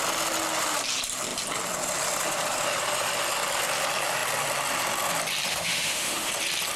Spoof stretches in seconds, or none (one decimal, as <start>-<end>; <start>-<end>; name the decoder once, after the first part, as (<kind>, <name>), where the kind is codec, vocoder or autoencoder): 5.5-6.3 (autoencoder, DAC-VAE)